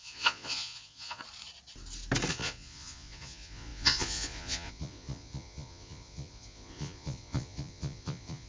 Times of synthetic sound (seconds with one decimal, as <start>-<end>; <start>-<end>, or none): 0.0-1.2; 2.3-8.5